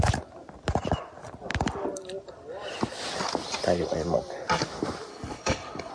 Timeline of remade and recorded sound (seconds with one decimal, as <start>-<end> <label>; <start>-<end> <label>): 0.0-5.1 recorded; 5.1-5.9 remade